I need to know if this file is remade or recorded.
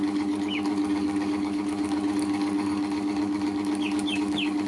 remade